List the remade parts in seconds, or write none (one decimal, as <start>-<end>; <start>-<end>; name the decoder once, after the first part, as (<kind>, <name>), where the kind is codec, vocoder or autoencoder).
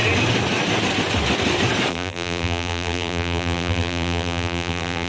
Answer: 1.9-5.1 (vocoder, BigVGAN v2)